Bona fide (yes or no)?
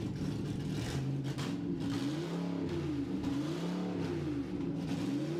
yes